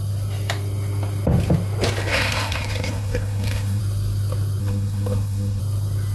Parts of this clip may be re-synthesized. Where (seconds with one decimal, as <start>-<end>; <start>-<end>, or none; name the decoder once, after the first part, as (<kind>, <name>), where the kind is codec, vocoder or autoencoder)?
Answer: 2.1-3.8 (codec, SNAC); 4.6-5.6